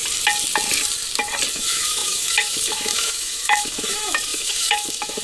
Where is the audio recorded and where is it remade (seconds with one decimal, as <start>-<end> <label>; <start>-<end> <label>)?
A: 0.0-1.5 recorded; 1.5-5.2 remade